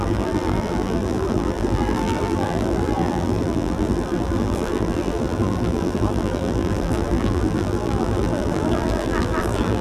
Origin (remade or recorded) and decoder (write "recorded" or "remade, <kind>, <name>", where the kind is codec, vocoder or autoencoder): remade, vocoder, BigVGAN v2